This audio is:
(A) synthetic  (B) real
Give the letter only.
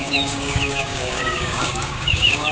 A